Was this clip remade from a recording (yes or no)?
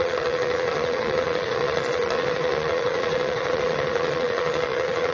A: yes